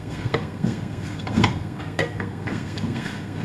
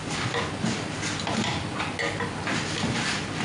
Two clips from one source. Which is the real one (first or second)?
second